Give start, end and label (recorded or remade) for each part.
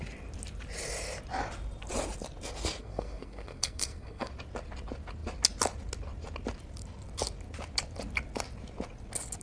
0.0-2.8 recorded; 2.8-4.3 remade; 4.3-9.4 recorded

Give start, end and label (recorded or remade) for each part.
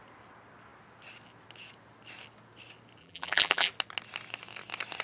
0.0-3.0 recorded; 3.0-3.7 remade; 3.7-5.0 recorded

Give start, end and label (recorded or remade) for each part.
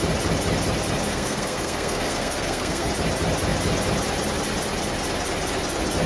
0.0-1.1 recorded; 1.1-2.9 remade; 2.9-6.1 recorded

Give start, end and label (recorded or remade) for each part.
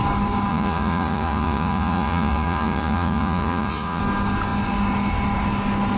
0.0-0.5 recorded; 0.5-4.0 remade; 4.0-6.0 recorded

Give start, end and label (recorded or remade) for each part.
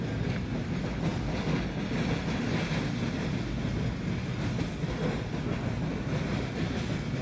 0.0-7.2 recorded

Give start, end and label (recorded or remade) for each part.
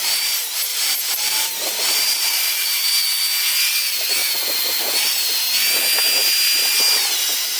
0.0-0.7 recorded; 0.7-2.9 remade; 2.9-7.6 recorded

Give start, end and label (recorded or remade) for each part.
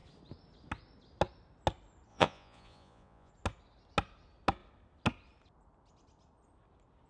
0.0-2.1 recorded; 2.1-3.3 remade; 3.3-7.1 recorded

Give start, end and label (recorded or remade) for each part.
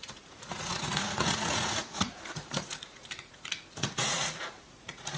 0.0-5.2 remade